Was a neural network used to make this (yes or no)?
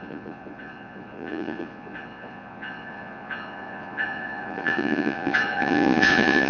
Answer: yes